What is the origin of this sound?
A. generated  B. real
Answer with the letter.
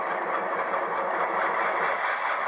B